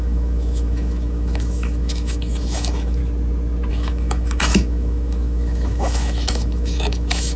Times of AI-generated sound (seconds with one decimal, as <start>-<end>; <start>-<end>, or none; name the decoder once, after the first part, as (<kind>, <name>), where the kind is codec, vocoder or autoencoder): 0.0-3.0 (autoencoder, DAC-VAE); 3.7-7.4